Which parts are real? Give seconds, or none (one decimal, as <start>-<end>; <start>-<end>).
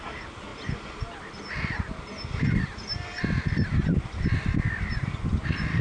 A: 0.0-5.8